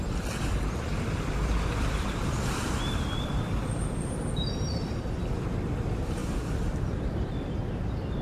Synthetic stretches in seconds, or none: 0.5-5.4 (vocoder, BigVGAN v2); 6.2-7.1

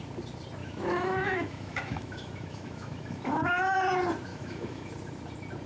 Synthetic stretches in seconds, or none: 0.6-3.6 (autoencoder, DAC-VAE); 4.3-4.9

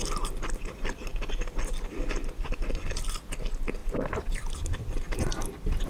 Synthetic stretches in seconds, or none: 3.8-4.5 (vocoder, BigVGAN v2)